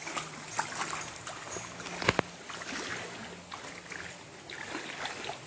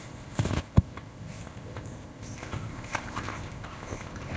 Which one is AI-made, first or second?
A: second